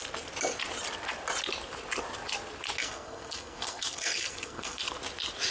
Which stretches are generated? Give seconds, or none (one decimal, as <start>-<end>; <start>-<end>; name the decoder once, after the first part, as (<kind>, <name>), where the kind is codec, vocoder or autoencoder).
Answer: 2.8-4.8 (codec, SNAC)